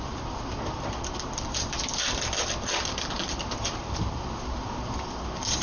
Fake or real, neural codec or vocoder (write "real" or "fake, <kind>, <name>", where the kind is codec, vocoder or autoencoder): fake, vocoder, BigVGAN v2